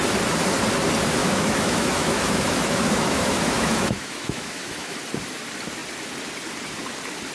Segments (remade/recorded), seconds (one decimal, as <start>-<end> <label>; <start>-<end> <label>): 0.0-1.2 recorded; 1.2-5.0 remade; 5.0-7.3 recorded